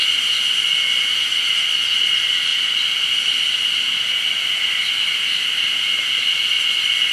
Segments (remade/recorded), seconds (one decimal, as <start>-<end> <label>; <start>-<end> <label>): 0.0-7.1 recorded